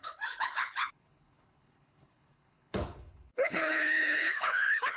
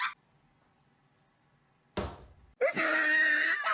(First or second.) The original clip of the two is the second